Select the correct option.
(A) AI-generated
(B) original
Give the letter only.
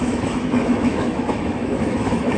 A